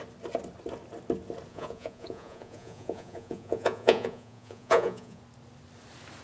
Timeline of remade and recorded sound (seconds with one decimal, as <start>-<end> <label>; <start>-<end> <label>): 0.0-1.5 recorded; 1.5-5.2 remade; 5.2-6.2 recorded